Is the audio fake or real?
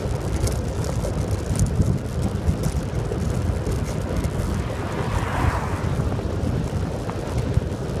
real